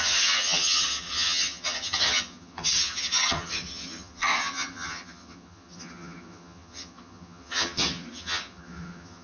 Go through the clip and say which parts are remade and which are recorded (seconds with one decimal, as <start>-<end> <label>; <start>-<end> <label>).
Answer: 0.0-9.2 remade